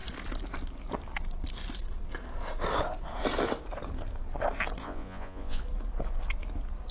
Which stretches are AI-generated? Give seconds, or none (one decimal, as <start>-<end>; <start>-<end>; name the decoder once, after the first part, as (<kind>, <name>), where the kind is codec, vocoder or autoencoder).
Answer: 4.8-5.6 (vocoder, Vocos)